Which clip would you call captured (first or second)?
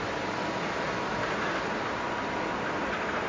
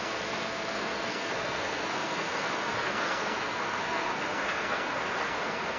first